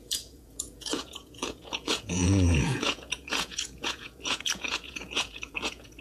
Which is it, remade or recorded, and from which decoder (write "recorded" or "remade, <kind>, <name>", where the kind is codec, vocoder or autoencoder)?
remade, vocoder, Vocos